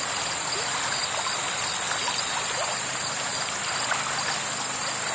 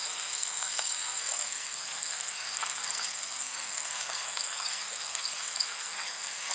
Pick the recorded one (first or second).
first